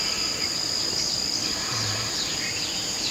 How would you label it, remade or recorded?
recorded